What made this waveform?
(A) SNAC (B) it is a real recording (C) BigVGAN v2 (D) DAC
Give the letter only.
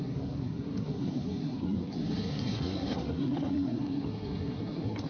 A